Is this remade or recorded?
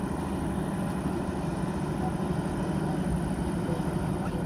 recorded